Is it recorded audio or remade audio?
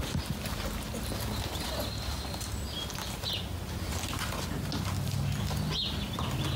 recorded